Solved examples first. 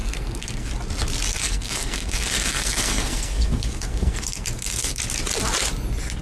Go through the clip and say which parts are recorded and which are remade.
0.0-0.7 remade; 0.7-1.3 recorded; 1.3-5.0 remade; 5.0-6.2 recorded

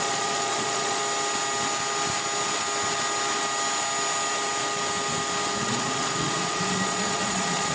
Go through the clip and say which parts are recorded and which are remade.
0.0-1.0 remade; 1.0-5.6 recorded; 5.6-7.7 remade

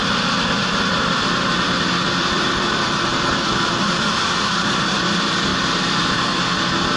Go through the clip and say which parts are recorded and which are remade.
0.0-2.2 recorded; 2.2-3.9 remade; 3.9-5.5 recorded; 5.5-6.4 remade; 6.4-7.0 recorded

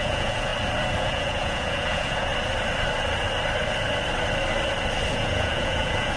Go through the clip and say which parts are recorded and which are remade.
0.0-0.5 remade; 0.5-1.0 recorded; 1.0-2.3 remade; 2.3-5.1 recorded; 5.1-6.2 remade

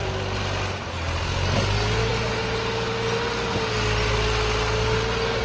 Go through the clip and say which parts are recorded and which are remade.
0.0-5.4 recorded

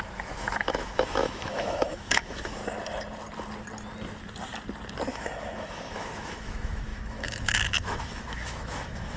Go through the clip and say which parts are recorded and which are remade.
0.0-2.6 remade; 2.6-5.1 recorded; 5.1-9.2 remade